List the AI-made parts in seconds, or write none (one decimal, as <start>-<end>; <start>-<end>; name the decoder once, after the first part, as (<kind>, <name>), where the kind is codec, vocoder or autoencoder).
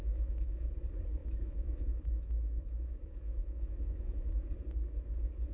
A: 0.0-0.7 (autoencoder, DAC-VAE); 1.2-4.5